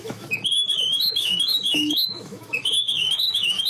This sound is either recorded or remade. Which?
remade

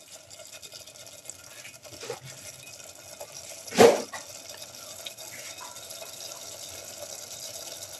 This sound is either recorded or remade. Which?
recorded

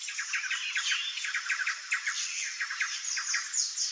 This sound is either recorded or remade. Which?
recorded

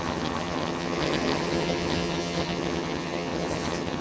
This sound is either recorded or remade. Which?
remade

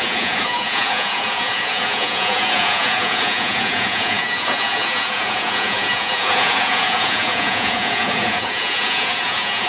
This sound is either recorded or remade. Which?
remade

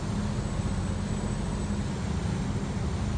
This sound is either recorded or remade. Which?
recorded